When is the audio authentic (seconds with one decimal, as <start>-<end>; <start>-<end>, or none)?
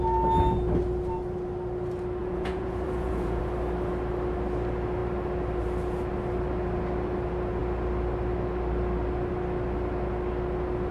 0.0-2.2; 3.4-10.9